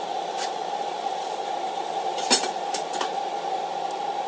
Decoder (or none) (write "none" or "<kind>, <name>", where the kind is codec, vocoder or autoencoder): none